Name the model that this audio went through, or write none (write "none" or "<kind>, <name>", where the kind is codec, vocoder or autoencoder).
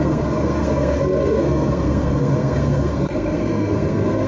codec, SNAC